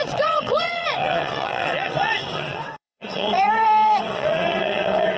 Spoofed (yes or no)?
yes